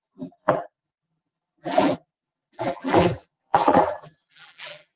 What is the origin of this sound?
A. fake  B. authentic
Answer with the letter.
A